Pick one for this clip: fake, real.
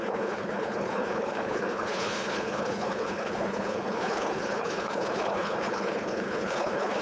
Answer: fake